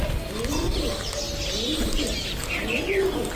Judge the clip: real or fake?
real